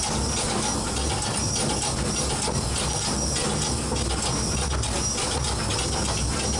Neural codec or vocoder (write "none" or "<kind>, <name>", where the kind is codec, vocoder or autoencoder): none